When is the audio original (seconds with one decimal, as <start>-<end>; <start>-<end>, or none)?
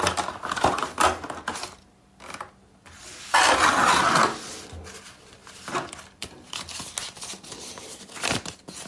0.0-8.9